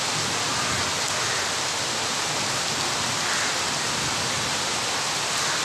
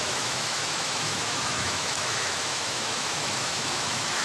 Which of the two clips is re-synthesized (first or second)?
second